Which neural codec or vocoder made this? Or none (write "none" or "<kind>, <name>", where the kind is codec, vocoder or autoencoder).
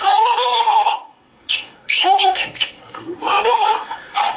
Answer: codec, SNAC